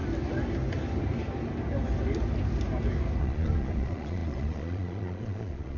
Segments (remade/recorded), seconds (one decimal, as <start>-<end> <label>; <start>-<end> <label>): 0.0-3.2 recorded; 3.2-5.8 remade